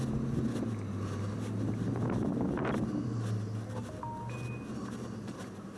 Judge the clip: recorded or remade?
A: recorded